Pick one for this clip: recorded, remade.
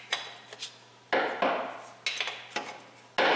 recorded